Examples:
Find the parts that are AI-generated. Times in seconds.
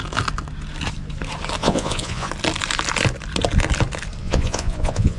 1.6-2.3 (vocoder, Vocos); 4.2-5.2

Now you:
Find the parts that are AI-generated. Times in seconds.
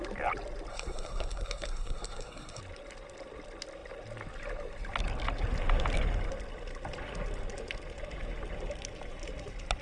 0.7-2.6 (codec, SNAC)